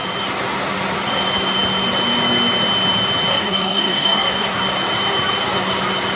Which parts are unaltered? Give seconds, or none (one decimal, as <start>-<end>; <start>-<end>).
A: 0.0-3.3; 4.6-6.2